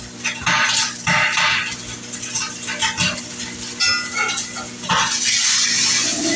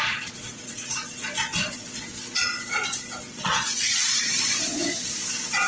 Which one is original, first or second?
first